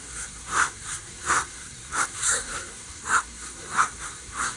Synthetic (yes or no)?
yes